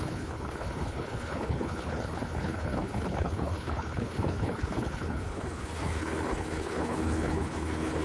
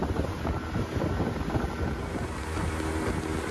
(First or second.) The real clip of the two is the second